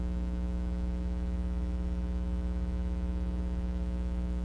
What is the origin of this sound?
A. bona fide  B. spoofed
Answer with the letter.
B